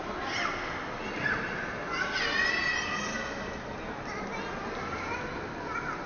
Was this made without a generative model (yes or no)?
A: yes